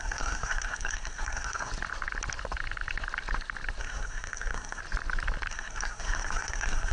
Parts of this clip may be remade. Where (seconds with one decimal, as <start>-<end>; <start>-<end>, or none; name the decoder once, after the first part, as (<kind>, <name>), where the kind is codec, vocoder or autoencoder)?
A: 0.0-1.7 (codec, SNAC); 3.8-4.8; 5.5-6.9